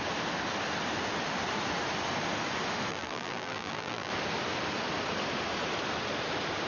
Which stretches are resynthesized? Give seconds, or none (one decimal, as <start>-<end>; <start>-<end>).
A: 2.9-4.1